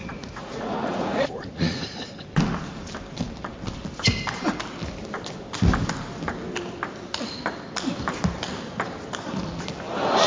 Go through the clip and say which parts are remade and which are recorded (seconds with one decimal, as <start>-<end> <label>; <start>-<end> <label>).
0.0-1.8 remade; 1.8-10.3 recorded